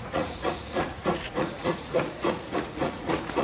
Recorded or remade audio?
remade